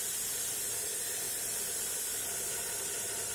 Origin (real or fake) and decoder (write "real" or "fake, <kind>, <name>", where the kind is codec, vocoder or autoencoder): real